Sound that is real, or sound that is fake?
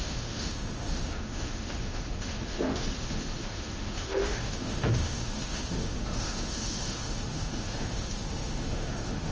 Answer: fake